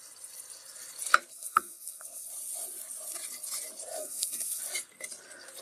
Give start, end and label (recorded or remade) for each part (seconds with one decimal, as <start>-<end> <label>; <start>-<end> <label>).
0.0-1.3 recorded; 1.3-2.3 remade; 2.3-4.0 recorded; 4.0-4.6 remade; 4.6-5.6 recorded